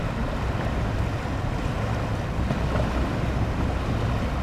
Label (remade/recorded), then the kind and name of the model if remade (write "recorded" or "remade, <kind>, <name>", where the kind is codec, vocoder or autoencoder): recorded